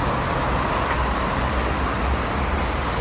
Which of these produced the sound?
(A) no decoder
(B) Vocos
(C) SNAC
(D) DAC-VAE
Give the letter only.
A